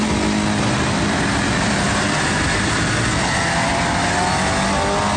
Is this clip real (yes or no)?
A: yes